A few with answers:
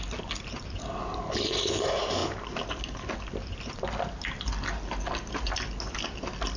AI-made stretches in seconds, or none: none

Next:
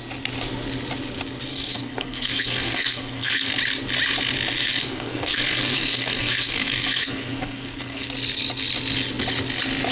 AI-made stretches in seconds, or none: 1.5-3.5 (codec, SNAC); 4.6-8.1